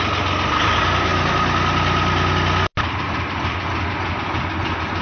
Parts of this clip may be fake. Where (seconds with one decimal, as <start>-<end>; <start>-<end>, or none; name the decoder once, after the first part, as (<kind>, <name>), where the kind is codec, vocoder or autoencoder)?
none